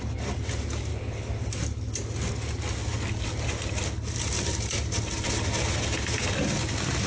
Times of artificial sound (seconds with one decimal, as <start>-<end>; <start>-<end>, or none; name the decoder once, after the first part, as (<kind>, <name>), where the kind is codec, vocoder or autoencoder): 0.9-1.5 (codec, HILCodec)